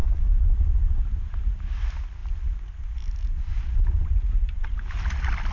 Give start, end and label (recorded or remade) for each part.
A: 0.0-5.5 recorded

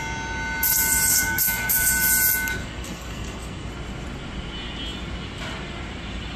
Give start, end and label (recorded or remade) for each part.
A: 0.0-1.1 recorded; 1.1-1.9 remade; 1.9-2.6 recorded; 2.6-3.7 remade; 3.7-6.4 recorded

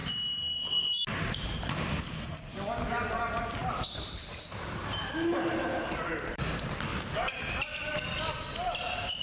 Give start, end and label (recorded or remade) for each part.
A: 0.0-3.6 recorded; 3.6-6.5 remade; 6.5-9.2 recorded

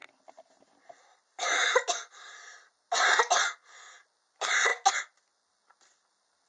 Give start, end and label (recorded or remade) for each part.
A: 0.0-6.5 recorded

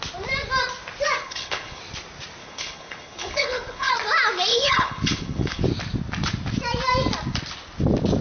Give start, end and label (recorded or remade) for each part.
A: 0.0-1.2 recorded; 1.2-1.8 remade; 1.8-2.4 recorded; 2.4-3.9 remade; 3.9-4.5 recorded; 4.5-5.6 remade; 5.6-8.2 recorded

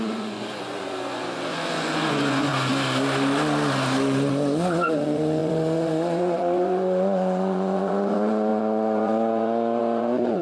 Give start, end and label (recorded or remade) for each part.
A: 0.0-2.5 remade; 2.5-4.3 recorded; 4.3-10.4 remade